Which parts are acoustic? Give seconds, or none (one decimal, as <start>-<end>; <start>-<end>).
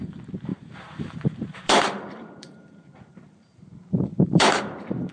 0.0-0.5; 3.6-4.1; 4.6-5.1